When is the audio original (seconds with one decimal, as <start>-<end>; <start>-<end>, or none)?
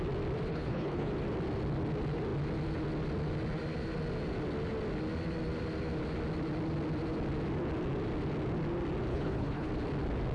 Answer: 0.0-0.5; 1.1-9.1; 9.7-10.3